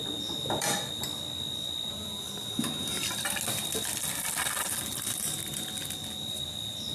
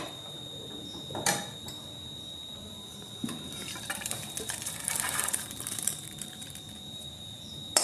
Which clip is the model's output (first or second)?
second